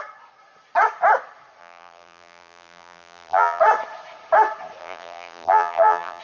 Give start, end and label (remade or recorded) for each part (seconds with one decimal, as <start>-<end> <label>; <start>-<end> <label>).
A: 0.0-1.6 recorded; 1.6-3.6 remade; 3.6-4.8 recorded; 4.8-6.2 remade